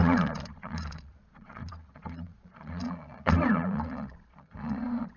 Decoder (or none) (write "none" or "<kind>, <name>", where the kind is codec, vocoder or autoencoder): vocoder, Vocos